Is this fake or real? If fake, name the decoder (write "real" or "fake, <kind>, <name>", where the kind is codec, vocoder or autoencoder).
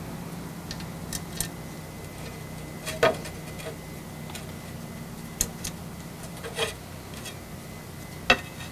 real